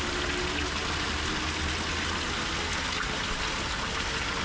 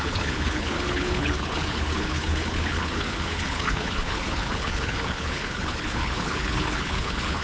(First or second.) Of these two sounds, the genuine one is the first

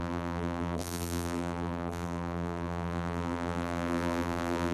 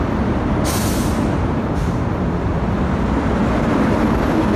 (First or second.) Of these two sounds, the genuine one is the second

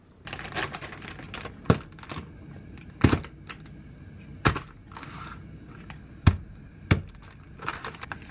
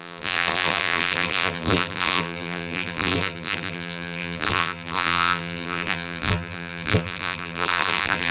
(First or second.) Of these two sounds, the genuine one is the first